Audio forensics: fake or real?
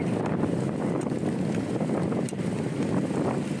fake